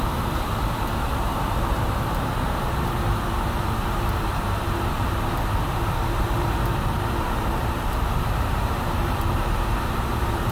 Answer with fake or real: fake